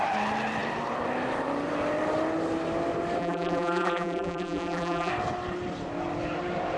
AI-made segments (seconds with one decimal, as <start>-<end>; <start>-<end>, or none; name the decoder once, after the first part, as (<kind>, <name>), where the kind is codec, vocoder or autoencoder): 3.2-5.1 (vocoder, BigVGAN v2)